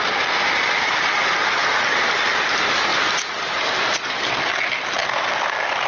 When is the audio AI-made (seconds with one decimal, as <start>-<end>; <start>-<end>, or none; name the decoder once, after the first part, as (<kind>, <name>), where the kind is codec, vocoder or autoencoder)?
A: none